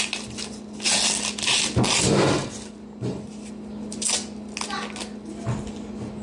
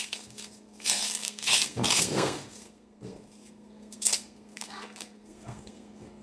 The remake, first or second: second